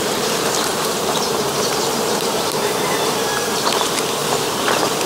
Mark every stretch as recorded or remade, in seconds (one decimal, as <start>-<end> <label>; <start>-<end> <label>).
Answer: 0.0-0.7 recorded; 0.7-3.8 remade; 3.8-5.1 recorded